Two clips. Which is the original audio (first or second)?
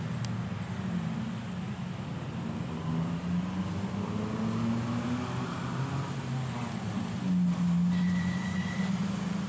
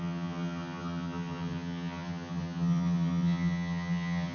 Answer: first